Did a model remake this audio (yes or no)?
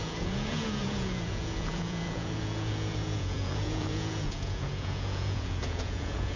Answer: yes